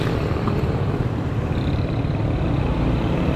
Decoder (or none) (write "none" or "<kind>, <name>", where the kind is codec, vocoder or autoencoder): vocoder, BigVGAN v2